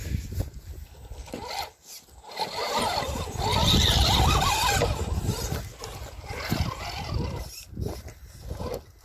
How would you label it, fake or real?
real